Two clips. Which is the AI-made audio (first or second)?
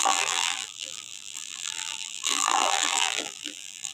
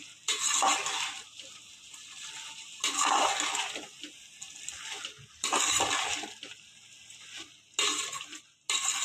first